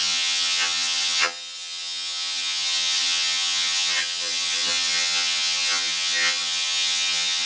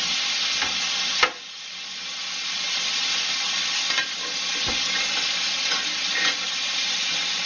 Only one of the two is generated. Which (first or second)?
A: first